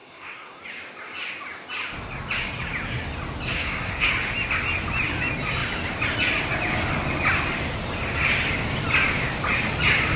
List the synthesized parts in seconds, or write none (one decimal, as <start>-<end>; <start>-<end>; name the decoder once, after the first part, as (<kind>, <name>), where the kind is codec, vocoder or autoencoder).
0.0-0.6 (codec, SNAC); 3.5-4.1